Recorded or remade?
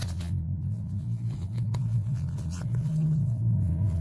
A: remade